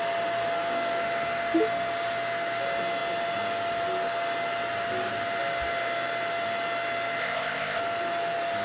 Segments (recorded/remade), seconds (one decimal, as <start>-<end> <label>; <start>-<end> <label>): 0.0-7.2 recorded; 7.2-7.8 remade; 7.8-8.6 recorded